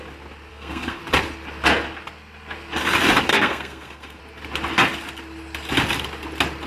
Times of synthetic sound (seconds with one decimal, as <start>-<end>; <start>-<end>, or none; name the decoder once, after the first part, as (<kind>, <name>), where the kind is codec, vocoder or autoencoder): 0.5-1.0 (codec, SNAC); 3.3-4.2